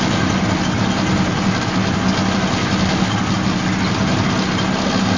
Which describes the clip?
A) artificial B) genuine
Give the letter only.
B